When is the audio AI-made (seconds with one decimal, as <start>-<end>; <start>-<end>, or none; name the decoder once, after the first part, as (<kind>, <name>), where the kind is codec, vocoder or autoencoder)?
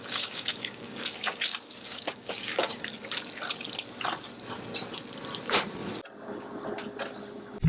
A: 0.0-2.8 (codec, DAC)